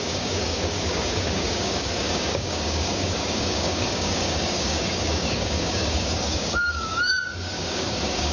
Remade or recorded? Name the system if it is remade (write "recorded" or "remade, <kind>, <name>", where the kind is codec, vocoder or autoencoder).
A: remade, codec, DAC